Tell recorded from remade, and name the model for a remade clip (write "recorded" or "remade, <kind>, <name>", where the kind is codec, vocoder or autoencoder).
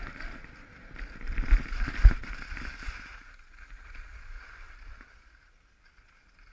recorded